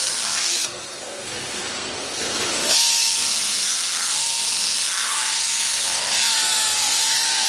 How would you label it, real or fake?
fake